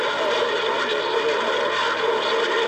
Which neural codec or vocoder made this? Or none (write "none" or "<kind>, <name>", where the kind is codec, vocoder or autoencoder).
none